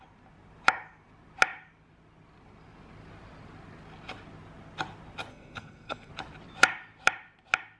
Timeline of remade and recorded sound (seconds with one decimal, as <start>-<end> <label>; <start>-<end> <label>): 0.0-5.3 recorded; 5.3-6.1 remade; 6.1-7.8 recorded